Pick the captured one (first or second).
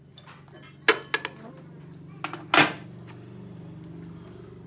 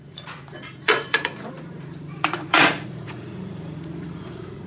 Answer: first